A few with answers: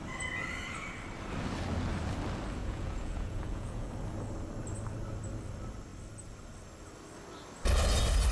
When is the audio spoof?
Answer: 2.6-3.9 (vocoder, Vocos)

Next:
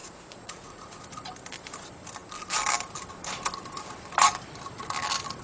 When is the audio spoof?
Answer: 0.0-1.0 (vocoder, Vocos)